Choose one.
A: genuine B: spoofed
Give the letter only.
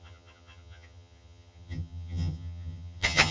B